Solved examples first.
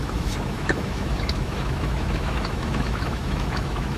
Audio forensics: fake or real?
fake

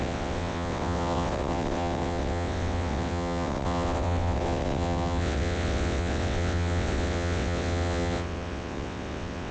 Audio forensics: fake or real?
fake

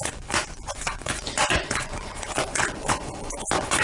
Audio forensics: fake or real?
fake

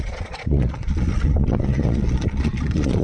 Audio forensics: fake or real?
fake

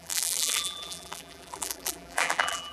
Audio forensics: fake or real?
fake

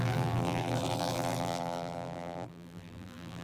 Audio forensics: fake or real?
fake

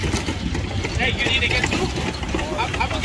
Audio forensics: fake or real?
real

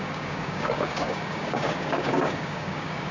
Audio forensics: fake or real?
fake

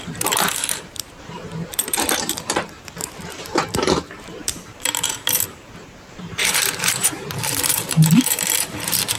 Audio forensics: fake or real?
fake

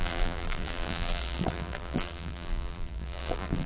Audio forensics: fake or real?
fake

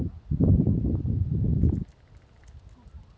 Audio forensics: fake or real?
real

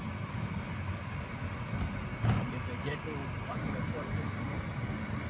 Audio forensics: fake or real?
real